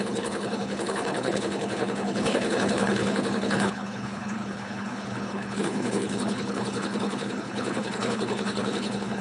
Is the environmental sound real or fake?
fake